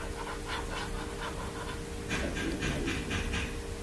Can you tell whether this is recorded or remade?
recorded